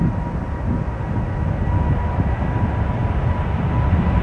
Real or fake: real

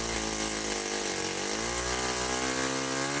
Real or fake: real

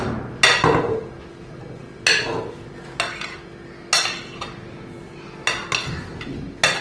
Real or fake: real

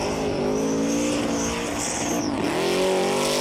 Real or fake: real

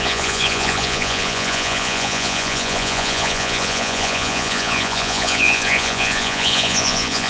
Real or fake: fake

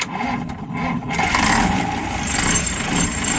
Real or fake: real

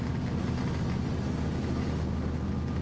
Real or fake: real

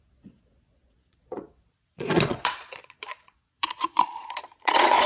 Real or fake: fake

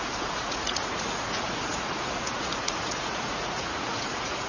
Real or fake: fake